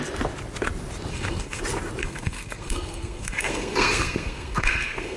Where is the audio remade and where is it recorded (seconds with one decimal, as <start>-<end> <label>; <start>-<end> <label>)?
0.0-1.1 recorded; 1.1-1.6 remade; 1.6-2.0 recorded; 2.0-5.2 remade